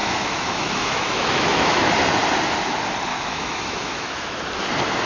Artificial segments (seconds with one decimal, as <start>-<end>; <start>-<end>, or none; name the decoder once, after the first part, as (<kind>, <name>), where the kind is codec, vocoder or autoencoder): 0.0-1.9 (autoencoder, DAC-VAE); 3.1-4.4